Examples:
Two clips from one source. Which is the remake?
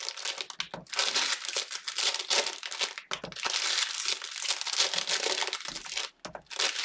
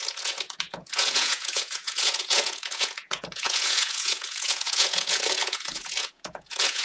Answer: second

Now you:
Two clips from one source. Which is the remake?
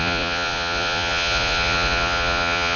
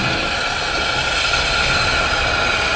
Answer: first